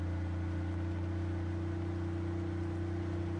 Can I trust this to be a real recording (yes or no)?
yes